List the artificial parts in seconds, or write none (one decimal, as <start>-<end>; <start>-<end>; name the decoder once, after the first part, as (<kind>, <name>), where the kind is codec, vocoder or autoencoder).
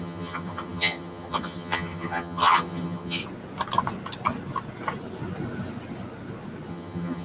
0.0-3.2 (vocoder, HiFi-GAN); 6.7-7.2